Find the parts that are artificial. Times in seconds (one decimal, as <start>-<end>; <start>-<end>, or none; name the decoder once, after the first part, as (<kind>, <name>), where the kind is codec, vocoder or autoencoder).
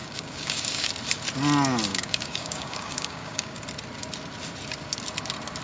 0.0-0.9 (codec, DAC); 1.9-3.6